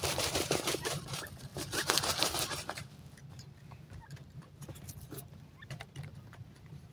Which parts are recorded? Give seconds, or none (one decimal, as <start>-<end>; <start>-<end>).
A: none